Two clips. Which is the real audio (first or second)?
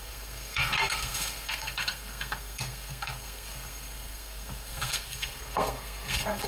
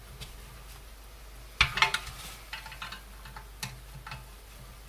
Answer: second